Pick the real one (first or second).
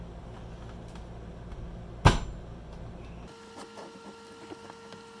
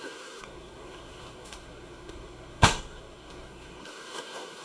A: first